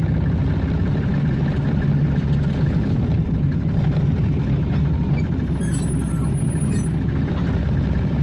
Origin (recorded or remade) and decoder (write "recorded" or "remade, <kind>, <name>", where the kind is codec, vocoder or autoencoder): recorded